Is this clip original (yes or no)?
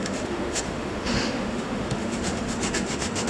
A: no